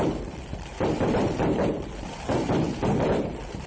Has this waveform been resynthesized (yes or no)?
yes